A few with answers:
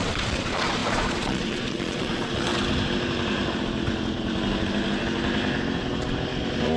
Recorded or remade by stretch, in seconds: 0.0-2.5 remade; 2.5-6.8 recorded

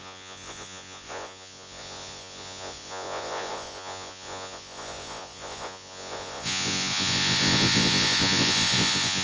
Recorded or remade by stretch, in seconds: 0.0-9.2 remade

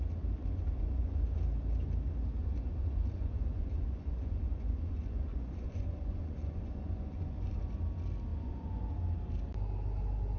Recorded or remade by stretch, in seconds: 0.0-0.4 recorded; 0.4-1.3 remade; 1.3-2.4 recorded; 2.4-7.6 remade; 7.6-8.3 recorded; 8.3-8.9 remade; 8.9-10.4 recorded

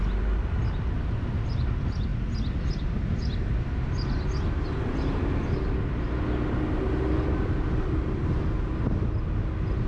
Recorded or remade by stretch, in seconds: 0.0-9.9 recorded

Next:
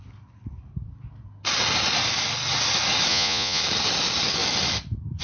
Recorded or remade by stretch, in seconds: 0.0-3.1 recorded; 3.1-3.6 remade; 3.6-5.2 recorded